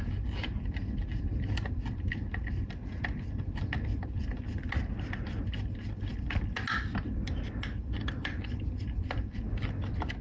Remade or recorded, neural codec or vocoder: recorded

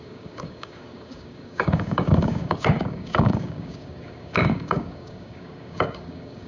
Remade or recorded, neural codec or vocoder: remade, codec, DAC